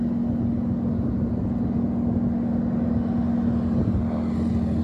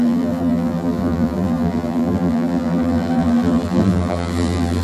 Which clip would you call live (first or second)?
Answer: first